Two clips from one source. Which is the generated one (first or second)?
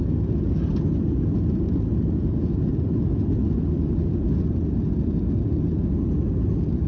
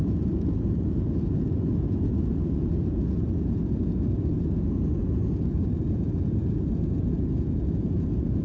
second